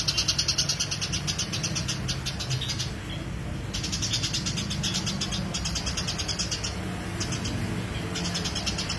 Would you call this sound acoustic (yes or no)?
yes